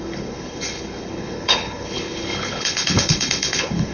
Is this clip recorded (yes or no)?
no